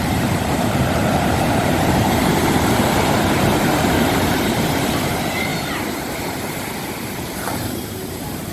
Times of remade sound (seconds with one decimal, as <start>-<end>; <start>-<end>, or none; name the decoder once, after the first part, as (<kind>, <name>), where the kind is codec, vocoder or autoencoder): 0.0-5.5 (vocoder, BigVGAN v2); 6.1-8.5